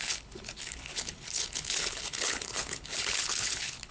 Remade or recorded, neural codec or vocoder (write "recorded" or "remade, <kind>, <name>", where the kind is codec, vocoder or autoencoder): remade, codec, HILCodec